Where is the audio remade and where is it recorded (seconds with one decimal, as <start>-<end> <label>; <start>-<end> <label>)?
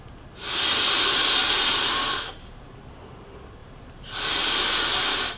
0.0-1.4 recorded; 1.4-2.8 remade; 2.8-3.6 recorded; 3.6-4.4 remade; 4.4-5.4 recorded